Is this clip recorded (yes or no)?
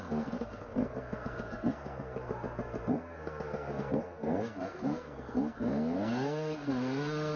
no